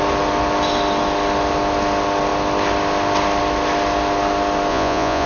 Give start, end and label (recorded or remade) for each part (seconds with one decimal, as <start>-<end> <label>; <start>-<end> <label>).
0.0-4.7 recorded; 4.7-5.3 remade